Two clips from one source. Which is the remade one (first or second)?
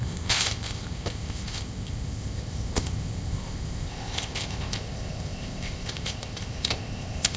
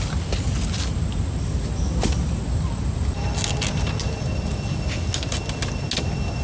first